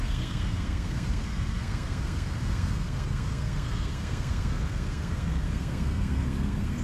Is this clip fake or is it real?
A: fake